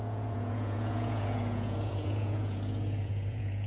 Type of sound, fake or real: fake